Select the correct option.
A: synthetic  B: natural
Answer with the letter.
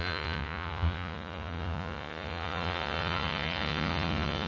A